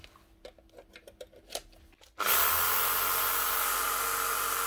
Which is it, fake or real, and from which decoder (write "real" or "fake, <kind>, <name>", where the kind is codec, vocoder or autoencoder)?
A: real